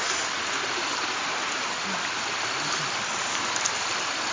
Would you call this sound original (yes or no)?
yes